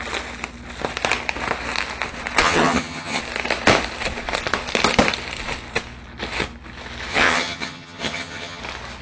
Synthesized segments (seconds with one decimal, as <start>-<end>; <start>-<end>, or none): 2.4-3.2; 7.1-8.6